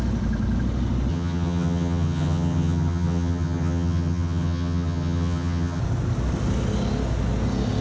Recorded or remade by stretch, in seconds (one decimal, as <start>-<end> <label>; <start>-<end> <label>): 0.0-1.1 recorded; 1.1-5.8 remade; 5.8-7.8 recorded